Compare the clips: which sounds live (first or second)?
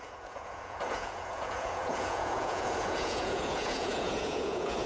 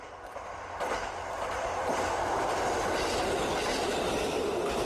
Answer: second